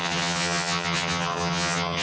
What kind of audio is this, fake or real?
fake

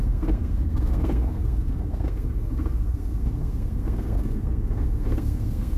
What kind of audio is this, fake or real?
fake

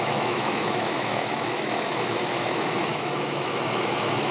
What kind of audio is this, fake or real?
fake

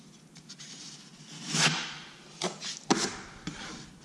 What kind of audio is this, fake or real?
real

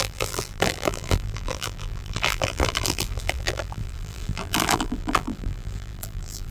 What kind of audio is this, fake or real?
fake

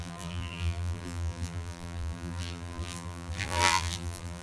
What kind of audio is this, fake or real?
fake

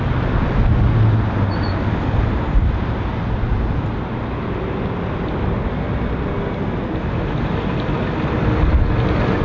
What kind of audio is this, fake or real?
real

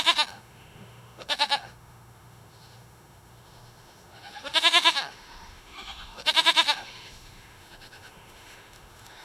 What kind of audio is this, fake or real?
fake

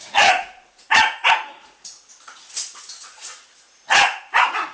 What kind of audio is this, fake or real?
fake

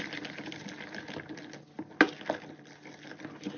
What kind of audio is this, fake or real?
real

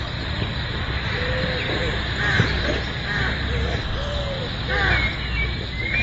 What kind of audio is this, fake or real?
real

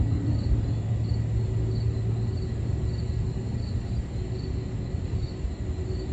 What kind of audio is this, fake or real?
real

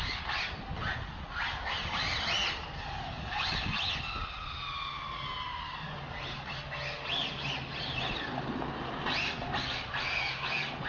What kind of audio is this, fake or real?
real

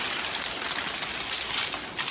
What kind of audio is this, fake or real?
real